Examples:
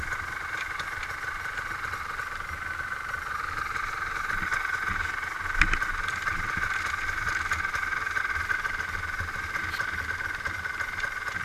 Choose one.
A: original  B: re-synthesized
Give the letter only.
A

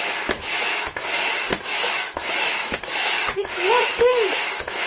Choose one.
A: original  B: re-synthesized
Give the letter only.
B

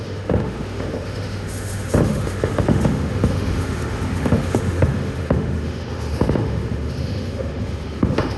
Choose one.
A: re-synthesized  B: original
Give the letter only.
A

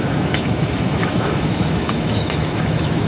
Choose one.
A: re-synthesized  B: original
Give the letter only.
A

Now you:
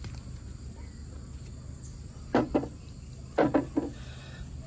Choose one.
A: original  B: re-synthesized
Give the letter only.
A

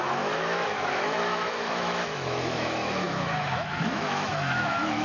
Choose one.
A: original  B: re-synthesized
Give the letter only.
B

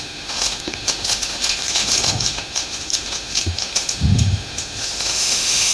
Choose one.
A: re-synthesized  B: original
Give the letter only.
A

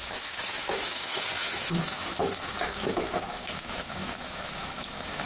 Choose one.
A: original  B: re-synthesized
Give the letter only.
B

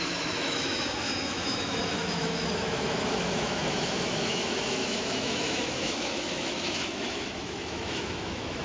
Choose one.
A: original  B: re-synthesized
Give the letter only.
B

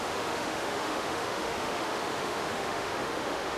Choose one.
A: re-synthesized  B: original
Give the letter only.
A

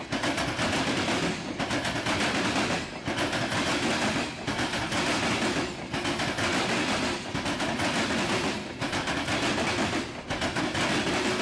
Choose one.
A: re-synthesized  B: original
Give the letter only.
B